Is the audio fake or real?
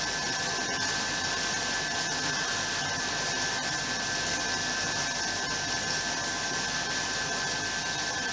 real